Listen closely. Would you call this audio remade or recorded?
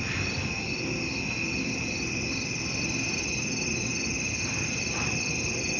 recorded